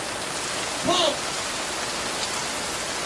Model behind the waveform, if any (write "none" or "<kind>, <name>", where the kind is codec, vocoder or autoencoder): none